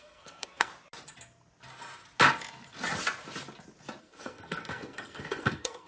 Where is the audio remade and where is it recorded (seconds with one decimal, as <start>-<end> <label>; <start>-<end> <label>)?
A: 0.0-0.7 remade; 0.7-4.0 recorded; 4.0-5.9 remade